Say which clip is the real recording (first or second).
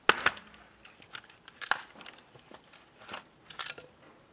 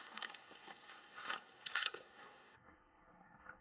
first